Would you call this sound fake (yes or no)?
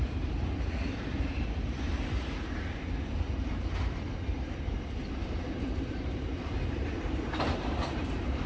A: yes